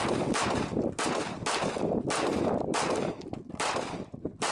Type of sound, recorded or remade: remade